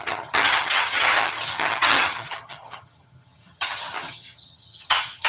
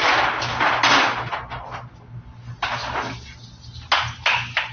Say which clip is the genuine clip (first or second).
second